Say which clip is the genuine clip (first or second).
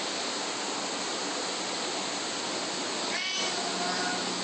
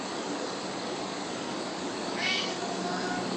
first